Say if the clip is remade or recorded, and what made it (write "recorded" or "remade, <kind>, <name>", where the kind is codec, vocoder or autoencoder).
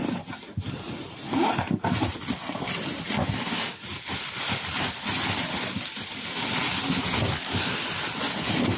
recorded